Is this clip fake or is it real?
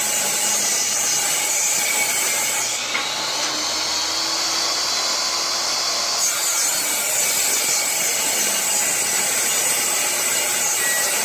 real